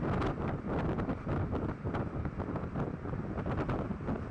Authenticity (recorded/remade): recorded